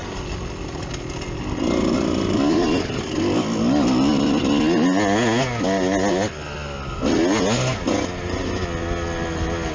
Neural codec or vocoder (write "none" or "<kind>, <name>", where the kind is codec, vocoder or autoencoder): none